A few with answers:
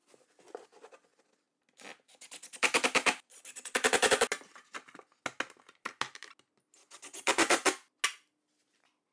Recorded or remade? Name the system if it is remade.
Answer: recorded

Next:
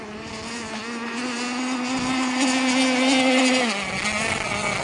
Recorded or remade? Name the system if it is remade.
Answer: recorded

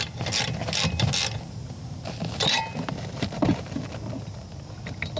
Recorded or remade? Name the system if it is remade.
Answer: recorded